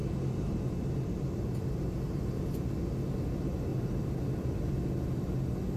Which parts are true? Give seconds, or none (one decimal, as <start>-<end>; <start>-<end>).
0.5-3.7; 4.2-5.8